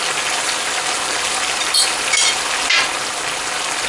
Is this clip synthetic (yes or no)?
no